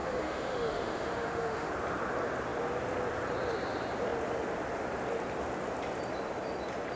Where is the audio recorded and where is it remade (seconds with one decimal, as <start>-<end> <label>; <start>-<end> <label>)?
0.0-1.7 remade; 1.7-7.0 recorded